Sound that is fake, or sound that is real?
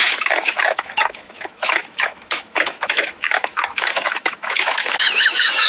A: fake